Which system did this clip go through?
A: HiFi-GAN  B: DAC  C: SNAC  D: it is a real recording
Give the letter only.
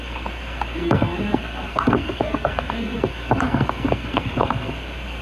C